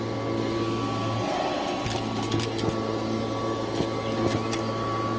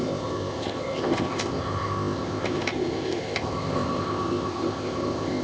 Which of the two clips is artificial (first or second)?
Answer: second